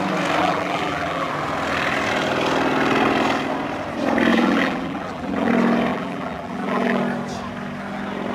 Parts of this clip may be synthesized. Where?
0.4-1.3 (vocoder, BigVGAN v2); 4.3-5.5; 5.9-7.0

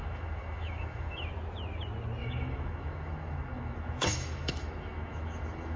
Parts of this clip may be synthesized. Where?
0.0-1.3 (autoencoder, DAC-VAE); 2.2-5.8